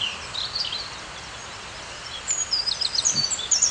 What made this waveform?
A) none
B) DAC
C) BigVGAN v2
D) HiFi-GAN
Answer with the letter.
C